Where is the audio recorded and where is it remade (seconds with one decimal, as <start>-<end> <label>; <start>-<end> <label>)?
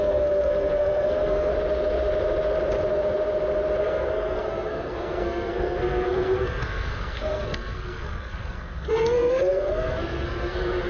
0.0-1.5 remade; 1.5-3.8 recorded; 3.8-10.9 remade